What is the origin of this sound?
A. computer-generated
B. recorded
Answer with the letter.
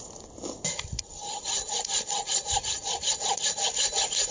B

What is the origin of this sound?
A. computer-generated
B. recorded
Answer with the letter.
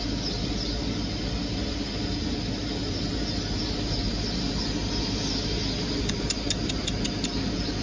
B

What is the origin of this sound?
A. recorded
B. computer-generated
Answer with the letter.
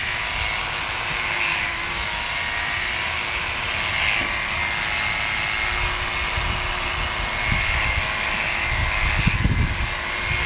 A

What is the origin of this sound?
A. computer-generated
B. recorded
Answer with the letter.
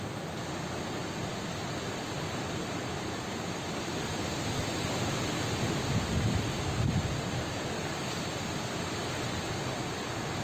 B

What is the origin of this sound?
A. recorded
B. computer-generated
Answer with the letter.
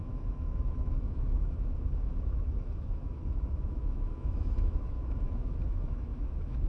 B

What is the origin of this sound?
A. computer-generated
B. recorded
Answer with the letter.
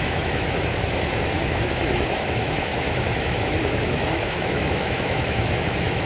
A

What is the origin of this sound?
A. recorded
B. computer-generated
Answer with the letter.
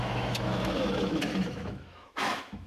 B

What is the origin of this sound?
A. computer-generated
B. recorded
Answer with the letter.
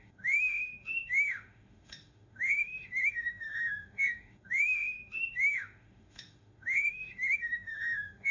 A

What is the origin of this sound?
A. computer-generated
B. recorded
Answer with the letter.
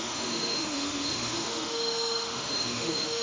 A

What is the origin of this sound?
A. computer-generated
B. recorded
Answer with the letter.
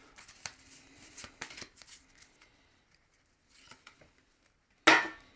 B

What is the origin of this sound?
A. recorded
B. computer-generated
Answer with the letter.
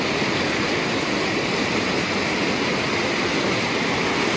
A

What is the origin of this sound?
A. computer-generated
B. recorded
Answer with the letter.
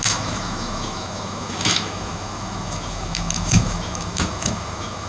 A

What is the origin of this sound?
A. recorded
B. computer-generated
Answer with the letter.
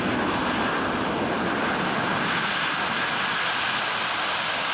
A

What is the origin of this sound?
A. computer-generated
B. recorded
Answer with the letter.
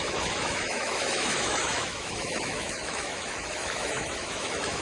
A